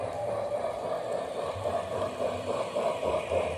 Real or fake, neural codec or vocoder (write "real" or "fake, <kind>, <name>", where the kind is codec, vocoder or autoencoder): fake, vocoder, BigVGAN v2